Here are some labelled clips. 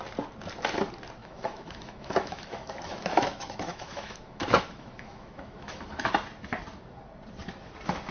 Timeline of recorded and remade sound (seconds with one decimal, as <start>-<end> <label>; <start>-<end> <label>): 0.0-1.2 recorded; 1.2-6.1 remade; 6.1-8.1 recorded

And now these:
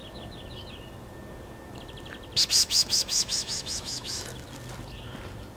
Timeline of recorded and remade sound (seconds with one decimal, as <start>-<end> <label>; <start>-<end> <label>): 0.0-2.6 recorded; 2.6-4.2 remade; 4.2-5.6 recorded

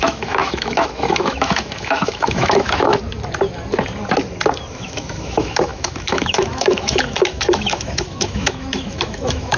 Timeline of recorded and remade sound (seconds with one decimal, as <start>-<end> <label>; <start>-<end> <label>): 0.0-2.9 remade; 2.9-4.7 recorded; 4.7-9.6 remade

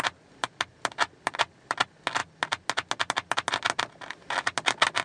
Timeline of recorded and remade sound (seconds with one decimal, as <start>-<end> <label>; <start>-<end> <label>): 0.0-5.0 recorded